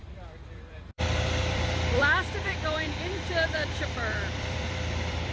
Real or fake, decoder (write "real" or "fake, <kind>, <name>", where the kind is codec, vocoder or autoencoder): fake, vocoder, BigVGAN v2